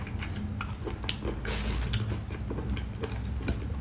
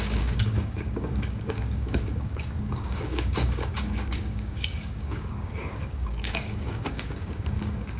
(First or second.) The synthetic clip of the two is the second